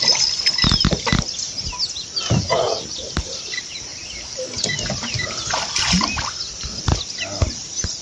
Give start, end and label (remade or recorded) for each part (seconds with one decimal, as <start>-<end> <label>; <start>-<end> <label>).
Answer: 0.0-8.0 recorded